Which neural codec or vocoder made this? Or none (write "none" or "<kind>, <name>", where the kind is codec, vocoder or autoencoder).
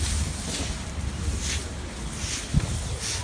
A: none